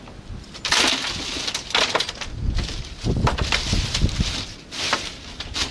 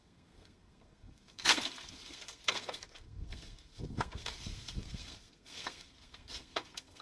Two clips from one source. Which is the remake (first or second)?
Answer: second